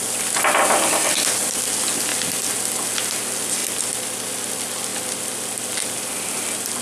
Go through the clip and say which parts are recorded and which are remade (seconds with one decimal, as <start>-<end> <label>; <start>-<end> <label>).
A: 0.0-6.8 recorded